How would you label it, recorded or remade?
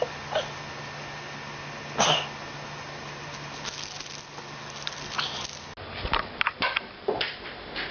recorded